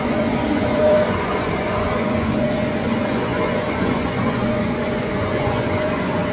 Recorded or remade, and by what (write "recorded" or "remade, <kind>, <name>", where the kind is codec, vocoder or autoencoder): remade, vocoder, Vocos